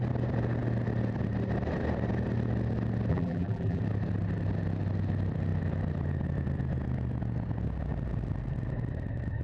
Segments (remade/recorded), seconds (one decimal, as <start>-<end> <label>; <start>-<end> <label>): 0.0-3.1 recorded; 3.1-3.8 remade; 3.8-9.4 recorded